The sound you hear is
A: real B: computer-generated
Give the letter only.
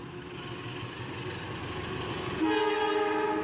A